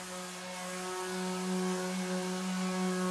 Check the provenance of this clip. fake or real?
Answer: real